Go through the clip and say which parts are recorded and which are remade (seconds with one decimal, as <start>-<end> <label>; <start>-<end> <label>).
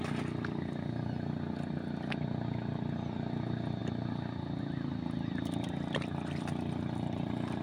0.0-7.6 recorded